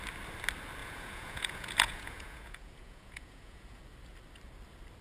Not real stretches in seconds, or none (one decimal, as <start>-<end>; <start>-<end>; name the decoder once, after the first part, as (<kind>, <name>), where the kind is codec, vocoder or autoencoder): 0.8-3.8 (vocoder, Vocos)